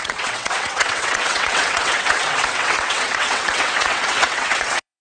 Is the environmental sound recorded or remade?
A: remade